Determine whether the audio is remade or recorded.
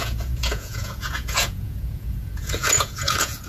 remade